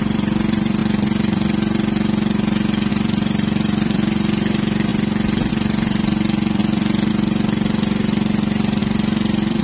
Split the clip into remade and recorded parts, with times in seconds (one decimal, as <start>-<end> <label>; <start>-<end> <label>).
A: 0.0-4.9 remade; 4.9-5.5 recorded; 5.5-9.6 remade